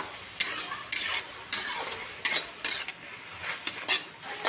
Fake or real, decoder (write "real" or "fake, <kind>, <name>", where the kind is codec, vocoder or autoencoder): real